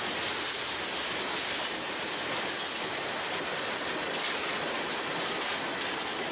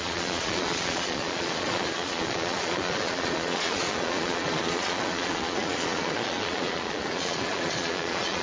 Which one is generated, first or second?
second